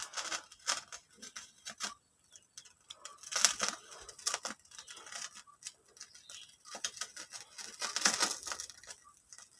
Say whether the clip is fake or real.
real